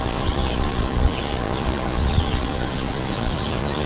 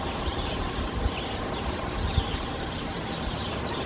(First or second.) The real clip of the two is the second